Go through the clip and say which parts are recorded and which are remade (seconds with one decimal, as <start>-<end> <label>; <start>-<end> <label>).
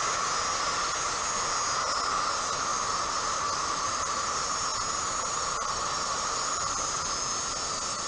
0.0-2.7 recorded; 2.7-4.2 remade; 4.2-8.1 recorded